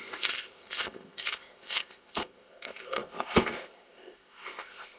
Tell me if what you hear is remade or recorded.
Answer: remade